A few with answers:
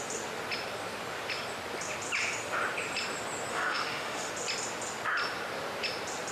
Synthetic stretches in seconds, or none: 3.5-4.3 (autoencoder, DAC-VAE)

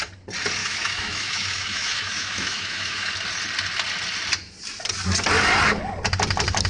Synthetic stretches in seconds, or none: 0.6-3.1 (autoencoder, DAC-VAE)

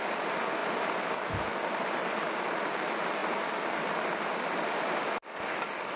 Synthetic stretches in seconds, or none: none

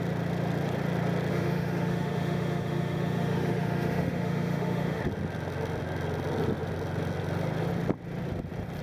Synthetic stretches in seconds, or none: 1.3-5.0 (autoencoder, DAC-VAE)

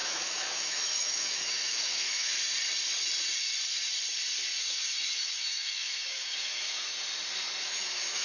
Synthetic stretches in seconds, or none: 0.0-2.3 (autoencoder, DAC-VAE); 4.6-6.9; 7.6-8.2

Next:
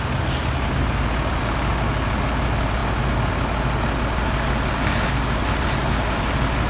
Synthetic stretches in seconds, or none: none